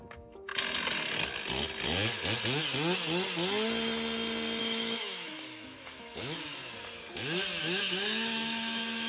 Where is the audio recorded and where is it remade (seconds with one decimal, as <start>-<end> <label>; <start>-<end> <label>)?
0.0-0.5 remade; 0.5-4.6 recorded; 4.6-6.6 remade; 6.6-7.6 recorded; 7.6-9.1 remade